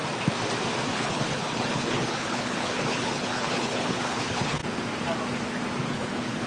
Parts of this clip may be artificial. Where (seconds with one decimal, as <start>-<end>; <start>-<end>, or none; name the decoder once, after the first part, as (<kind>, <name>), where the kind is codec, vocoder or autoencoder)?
0.9-4.6 (codec, HILCodec); 5.8-6.5